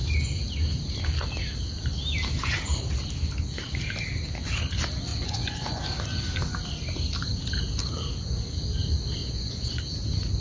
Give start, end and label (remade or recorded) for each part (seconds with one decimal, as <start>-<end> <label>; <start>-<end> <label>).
0.0-5.1 recorded; 5.1-5.8 remade; 5.8-9.2 recorded; 9.2-9.8 remade; 9.8-10.4 recorded